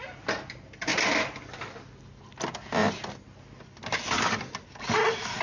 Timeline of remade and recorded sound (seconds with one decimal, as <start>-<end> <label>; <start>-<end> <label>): 0.0-5.4 recorded